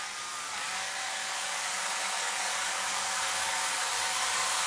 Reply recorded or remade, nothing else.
remade